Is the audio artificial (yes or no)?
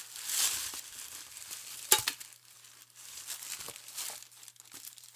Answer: no